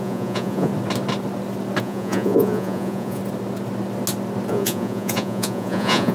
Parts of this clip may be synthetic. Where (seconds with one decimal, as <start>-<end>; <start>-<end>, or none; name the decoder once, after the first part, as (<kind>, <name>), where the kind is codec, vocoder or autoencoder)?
0.0-0.7 (vocoder, Vocos); 1.8-3.2; 4.5-6.1